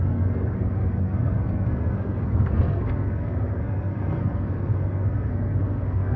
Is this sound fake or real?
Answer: fake